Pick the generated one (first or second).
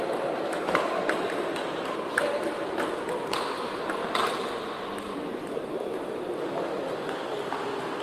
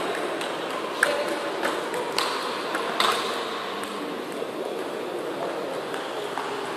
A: first